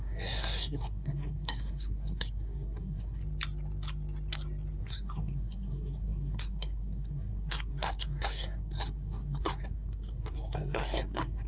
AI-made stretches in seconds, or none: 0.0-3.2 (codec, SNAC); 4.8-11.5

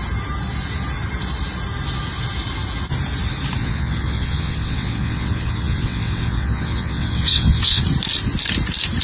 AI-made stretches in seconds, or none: 3.6-7.8 (vocoder, WaveNeXt)

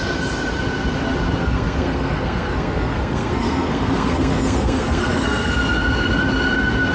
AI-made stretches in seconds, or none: 1.4-5.5 (codec, SNAC)

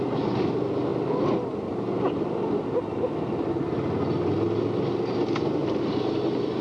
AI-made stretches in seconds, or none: none

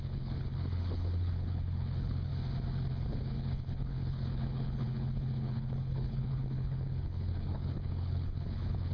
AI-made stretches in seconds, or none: 0.0-2.3 (codec, HILCodec); 2.9-8.9

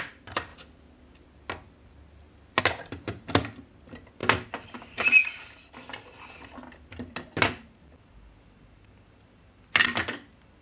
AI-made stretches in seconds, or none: none